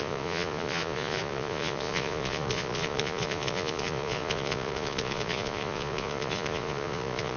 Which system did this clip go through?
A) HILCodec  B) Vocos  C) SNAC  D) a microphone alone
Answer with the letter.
B